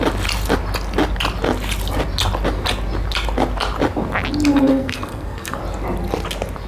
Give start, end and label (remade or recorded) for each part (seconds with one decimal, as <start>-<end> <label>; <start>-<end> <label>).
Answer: 0.0-4.5 recorded; 4.5-5.6 remade; 5.6-6.7 recorded